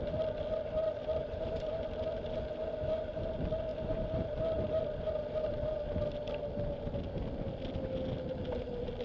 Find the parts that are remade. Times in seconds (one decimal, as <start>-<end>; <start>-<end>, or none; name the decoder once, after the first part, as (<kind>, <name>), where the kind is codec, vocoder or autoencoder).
1.2-1.7 (vocoder, BigVGAN v2); 3.7-4.8

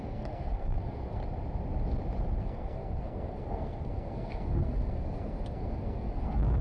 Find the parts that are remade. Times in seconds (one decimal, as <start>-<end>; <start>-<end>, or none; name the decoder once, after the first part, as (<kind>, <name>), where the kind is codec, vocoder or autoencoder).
0.0-1.2 (codec, SNAC); 2.4-6.6

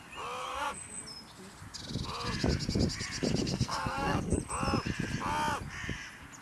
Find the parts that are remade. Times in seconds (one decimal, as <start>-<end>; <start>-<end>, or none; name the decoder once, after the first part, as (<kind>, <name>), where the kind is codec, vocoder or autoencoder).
0.4-1.0 (codec, SNAC); 3.4-4.4

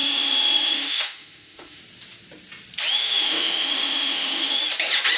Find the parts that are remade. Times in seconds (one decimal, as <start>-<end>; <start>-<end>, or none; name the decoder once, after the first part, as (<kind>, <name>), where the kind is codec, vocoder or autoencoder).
0.0-1.8 (autoencoder, DAC-VAE); 3.0-4.6

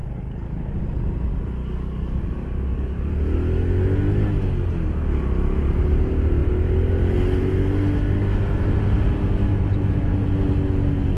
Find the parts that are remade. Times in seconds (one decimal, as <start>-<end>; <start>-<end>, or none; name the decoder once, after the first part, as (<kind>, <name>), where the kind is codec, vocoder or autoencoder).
0.0-0.8 (codec, DAC); 1.6-3.1